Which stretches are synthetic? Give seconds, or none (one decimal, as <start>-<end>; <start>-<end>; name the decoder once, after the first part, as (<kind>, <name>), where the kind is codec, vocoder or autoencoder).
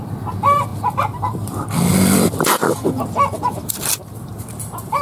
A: none